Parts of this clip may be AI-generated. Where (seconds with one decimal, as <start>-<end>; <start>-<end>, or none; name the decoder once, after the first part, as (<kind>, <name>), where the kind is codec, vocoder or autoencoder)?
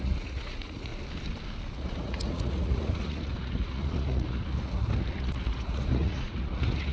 0.0-0.9 (vocoder, Vocos); 1.7-6.9